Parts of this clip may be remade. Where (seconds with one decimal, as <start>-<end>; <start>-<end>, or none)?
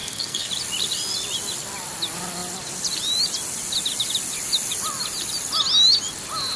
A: 0.0-0.5